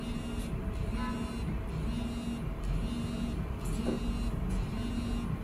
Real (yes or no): yes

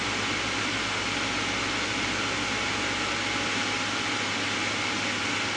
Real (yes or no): yes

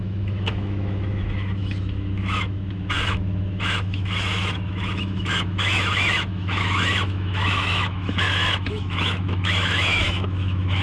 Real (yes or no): no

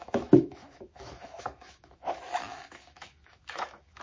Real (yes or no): no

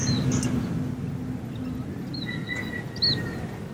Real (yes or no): yes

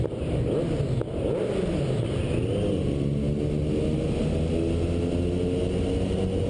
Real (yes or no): yes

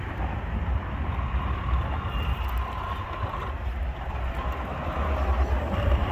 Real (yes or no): yes